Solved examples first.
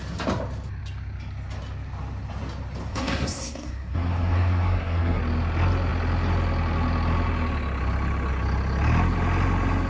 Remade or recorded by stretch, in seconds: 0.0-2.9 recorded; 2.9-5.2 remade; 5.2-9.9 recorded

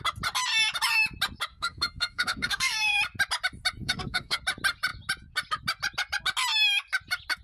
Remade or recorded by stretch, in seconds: 0.0-1.5 recorded; 1.5-3.0 remade; 3.0-3.8 recorded; 3.8-4.4 remade; 4.4-7.4 recorded

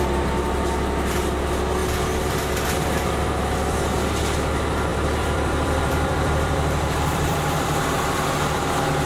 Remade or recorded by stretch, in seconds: 0.0-4.9 recorded; 4.9-8.3 remade; 8.3-9.1 recorded

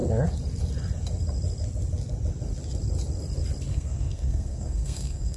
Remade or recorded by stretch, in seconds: 0.0-3.7 recorded; 3.7-5.4 remade

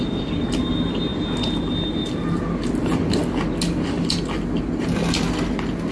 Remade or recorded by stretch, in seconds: 0.0-5.9 recorded

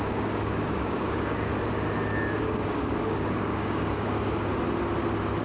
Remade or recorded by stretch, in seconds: 0.0-1.5 remade; 1.5-2.4 recorded; 2.4-4.5 remade; 4.5-5.4 recorded

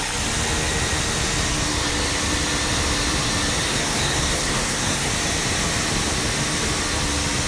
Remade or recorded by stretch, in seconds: 0.0-3.7 recorded; 3.7-5.1 remade; 5.1-7.5 recorded

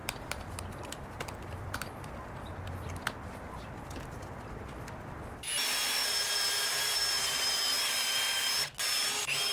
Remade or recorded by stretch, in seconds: 0.0-0.5 remade; 0.5-9.5 recorded